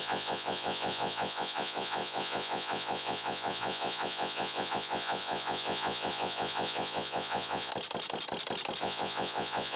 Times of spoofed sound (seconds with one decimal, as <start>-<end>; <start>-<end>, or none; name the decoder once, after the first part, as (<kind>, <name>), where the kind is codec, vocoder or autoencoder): 0.0-7.7 (vocoder, Vocos); 8.8-9.8